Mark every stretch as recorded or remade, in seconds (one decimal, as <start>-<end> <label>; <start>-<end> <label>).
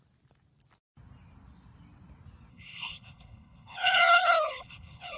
0.0-2.5 recorded; 2.5-5.2 remade